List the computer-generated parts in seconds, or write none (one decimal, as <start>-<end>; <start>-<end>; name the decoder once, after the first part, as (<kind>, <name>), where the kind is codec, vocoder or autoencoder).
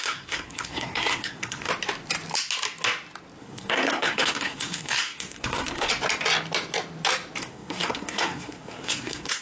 0.0-1.7 (codec, SNAC); 3.4-5.9; 7.4-9.4